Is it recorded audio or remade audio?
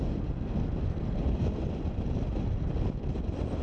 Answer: recorded